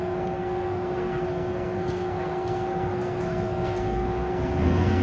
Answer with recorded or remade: remade